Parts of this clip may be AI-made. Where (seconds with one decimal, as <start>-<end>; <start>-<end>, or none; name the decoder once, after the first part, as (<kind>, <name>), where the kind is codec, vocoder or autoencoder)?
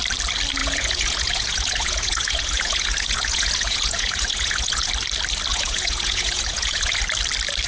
0.6-4.9 (vocoder, Vocos); 5.5-7.0